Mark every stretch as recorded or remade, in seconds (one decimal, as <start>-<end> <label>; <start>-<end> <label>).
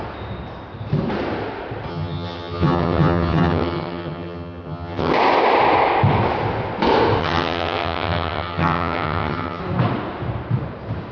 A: 0.0-1.9 recorded; 1.9-5.1 remade; 5.1-7.2 recorded; 7.2-9.6 remade; 9.6-11.1 recorded